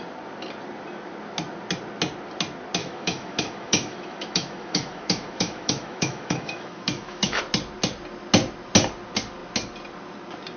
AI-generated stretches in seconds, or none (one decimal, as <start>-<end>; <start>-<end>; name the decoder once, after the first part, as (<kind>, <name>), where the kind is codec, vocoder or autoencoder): 2.8-7.4 (autoencoder, DAC-VAE)

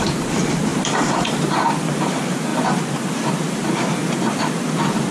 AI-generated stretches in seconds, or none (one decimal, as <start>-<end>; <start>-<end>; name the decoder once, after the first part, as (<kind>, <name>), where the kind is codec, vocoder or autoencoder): 0.7-1.6 (vocoder, BigVGAN v2)

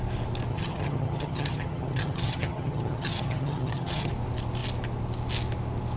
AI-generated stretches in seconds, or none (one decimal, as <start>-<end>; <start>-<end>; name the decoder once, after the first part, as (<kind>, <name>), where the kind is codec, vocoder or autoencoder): 0.5-4.1 (vocoder, HiFi-GAN)

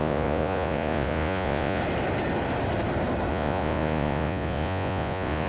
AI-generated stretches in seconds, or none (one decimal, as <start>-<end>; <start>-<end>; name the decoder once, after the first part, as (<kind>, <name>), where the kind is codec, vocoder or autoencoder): 0.0-1.8 (vocoder, Vocos); 3.3-5.5